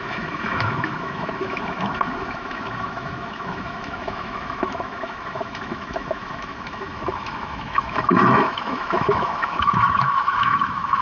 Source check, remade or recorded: remade